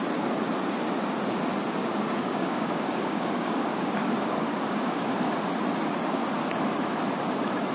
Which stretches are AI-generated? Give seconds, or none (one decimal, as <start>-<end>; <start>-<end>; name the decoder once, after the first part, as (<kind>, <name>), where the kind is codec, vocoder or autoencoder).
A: 1.8-5.3 (codec, DAC)